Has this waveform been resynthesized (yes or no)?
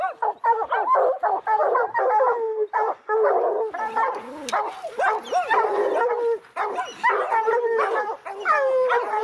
no